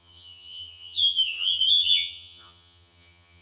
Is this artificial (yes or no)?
yes